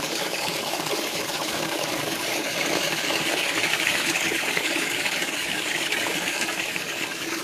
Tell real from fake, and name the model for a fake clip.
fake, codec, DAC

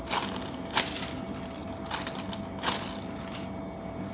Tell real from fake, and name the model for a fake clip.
real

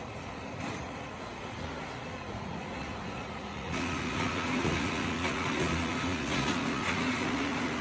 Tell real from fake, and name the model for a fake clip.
fake, vocoder, Vocos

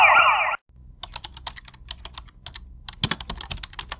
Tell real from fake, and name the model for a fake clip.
real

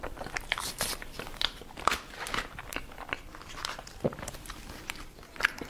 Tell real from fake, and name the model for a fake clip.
fake, vocoder, BigVGAN v2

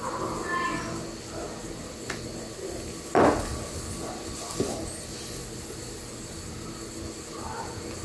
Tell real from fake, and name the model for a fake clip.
real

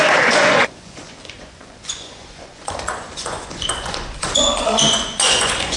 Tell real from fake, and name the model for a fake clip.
fake, vocoder, Vocos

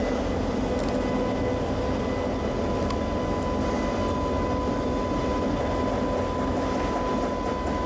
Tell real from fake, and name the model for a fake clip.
real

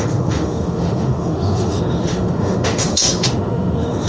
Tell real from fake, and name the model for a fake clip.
fake, autoencoder, DAC-VAE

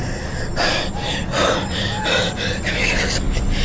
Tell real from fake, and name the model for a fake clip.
real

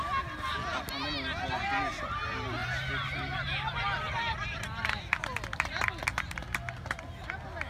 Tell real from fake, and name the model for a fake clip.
real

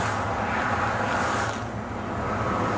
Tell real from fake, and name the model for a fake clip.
real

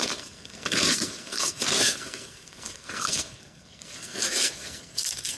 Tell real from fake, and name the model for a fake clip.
fake, codec, SNAC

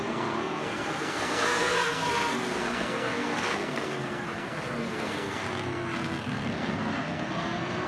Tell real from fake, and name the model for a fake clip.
fake, codec, SNAC